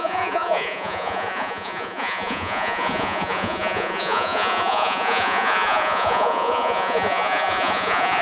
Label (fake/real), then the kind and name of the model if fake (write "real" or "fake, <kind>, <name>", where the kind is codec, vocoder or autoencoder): fake, vocoder, Vocos